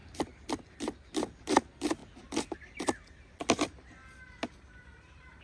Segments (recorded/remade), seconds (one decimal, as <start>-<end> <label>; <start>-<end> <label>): 0.0-5.4 recorded

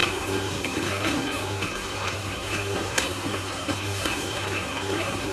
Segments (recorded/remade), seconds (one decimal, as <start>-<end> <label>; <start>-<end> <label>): 0.0-5.3 remade

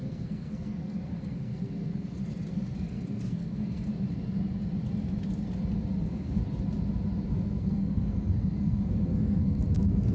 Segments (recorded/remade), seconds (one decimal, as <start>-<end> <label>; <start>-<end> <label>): 0.0-3.9 remade; 3.9-6.0 recorded; 6.0-6.4 remade; 6.4-7.3 recorded; 7.3-10.1 remade

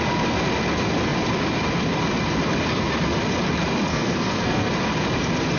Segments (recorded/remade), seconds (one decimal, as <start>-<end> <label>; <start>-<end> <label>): 0.0-3.9 recorded; 3.9-4.7 remade; 4.7-5.6 recorded

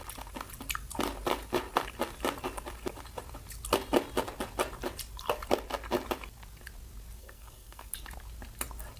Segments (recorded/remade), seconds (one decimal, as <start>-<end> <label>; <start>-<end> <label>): 0.0-7.2 recorded; 7.2-7.9 remade; 7.9-9.0 recorded

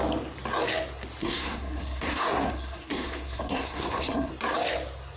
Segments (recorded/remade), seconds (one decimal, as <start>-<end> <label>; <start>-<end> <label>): 0.0-1.2 recorded; 1.2-4.3 remade; 4.3-5.2 recorded

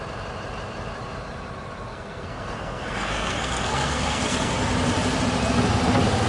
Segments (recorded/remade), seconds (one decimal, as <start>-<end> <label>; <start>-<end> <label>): 0.0-1.9 recorded; 1.9-4.5 remade; 4.5-6.3 recorded

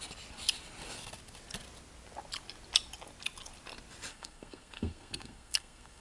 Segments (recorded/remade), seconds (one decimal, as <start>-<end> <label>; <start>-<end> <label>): 0.0-4.1 recorded; 4.1-6.0 remade